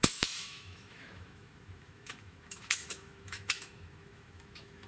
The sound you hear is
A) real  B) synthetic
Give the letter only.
B